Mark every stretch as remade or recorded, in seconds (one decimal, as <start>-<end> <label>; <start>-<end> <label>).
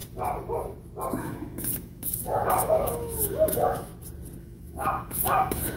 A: 0.0-1.1 recorded; 1.1-3.9 remade; 3.9-4.4 recorded; 4.4-5.8 remade